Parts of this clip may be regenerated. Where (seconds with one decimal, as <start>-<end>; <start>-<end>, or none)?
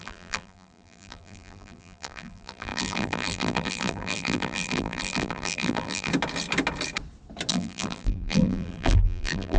0.0-6.1; 7.5-9.6